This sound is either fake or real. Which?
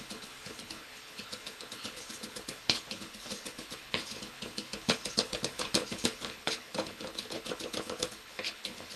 fake